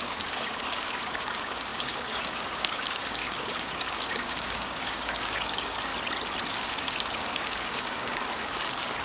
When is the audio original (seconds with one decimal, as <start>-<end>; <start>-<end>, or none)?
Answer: 5.9-6.5